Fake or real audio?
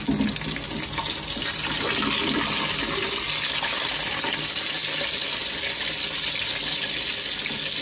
real